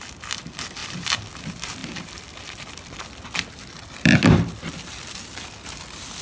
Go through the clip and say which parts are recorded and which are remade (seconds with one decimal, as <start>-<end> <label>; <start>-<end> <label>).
0.0-0.8 recorded; 0.8-1.3 remade; 1.3-1.8 recorded; 1.8-5.5 remade; 5.5-6.2 recorded